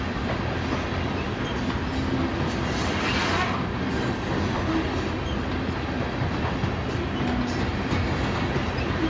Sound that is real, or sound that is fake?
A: real